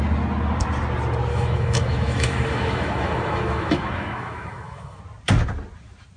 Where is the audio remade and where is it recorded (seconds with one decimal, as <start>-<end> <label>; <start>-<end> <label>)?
0.0-1.3 recorded; 1.3-5.0 remade; 5.0-6.2 recorded